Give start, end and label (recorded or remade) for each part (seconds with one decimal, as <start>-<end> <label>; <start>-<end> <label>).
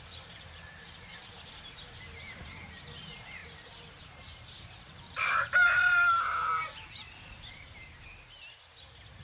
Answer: 0.0-5.8 remade; 5.8-6.5 recorded; 6.5-9.2 remade